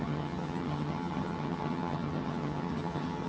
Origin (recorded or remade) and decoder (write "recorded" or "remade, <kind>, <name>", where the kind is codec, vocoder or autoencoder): remade, vocoder, HiFi-GAN